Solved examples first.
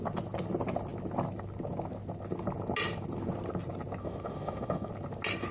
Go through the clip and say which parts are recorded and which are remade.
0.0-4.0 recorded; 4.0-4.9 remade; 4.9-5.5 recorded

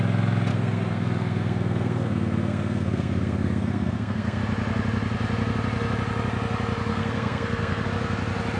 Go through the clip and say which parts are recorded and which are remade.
0.0-0.5 recorded; 0.5-4.4 remade; 4.4-6.9 recorded; 6.9-7.9 remade; 7.9-8.6 recorded

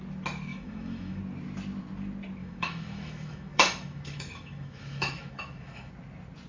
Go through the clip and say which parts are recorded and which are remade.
0.0-0.5 recorded; 0.5-1.2 remade; 1.2-2.4 recorded; 2.4-5.9 remade; 5.9-6.5 recorded